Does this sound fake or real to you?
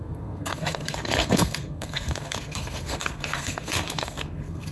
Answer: fake